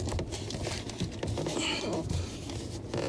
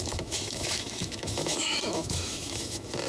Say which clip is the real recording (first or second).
first